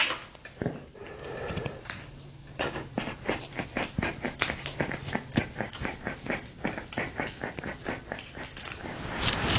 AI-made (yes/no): no